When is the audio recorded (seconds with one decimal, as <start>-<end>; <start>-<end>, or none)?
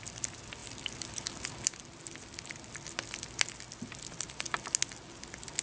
0.0-5.6